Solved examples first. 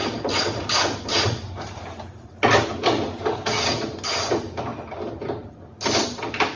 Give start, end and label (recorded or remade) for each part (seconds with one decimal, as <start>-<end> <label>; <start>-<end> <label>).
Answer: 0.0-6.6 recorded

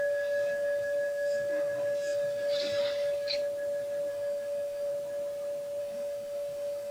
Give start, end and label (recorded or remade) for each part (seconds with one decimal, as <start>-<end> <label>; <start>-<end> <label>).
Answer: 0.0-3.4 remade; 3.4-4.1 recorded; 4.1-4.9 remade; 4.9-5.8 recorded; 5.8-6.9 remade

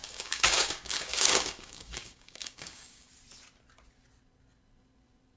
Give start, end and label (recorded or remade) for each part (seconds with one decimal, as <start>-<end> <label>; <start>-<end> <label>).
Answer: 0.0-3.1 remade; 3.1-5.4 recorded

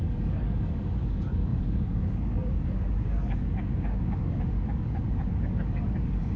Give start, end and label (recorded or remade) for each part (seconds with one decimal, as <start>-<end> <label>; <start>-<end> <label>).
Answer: 0.0-6.4 remade